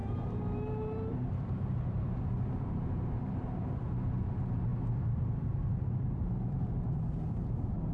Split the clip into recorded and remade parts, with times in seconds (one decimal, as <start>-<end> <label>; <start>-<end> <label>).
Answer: 0.0-4.7 remade; 4.7-5.9 recorded; 5.9-7.9 remade